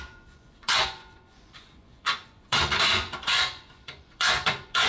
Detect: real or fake fake